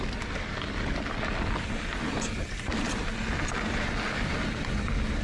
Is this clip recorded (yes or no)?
yes